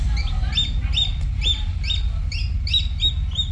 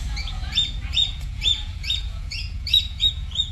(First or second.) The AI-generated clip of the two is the second